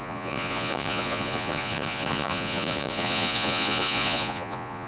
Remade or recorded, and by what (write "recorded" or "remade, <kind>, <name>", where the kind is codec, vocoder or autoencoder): remade, vocoder, Vocos